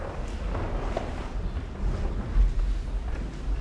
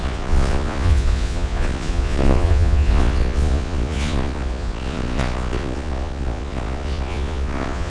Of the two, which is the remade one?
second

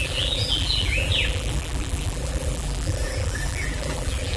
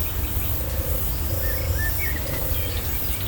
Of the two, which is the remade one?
first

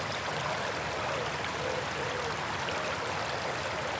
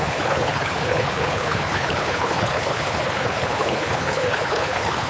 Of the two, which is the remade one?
second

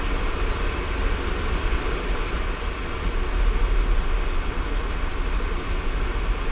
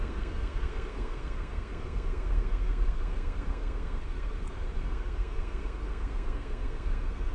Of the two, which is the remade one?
second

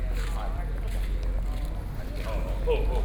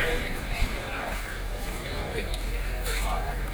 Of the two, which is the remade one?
second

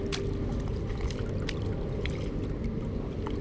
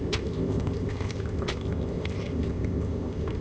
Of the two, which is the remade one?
second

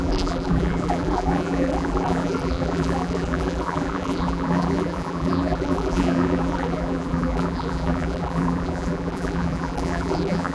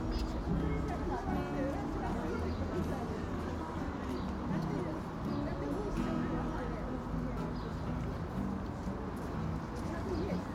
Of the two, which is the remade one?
first